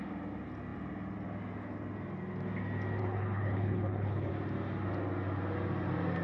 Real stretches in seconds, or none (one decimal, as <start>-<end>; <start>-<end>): 0.0-3.0; 4.3-6.2